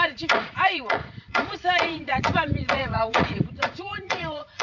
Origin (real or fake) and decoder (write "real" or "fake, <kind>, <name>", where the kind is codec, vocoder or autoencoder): fake, vocoder, Vocos